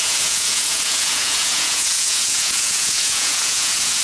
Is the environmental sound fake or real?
fake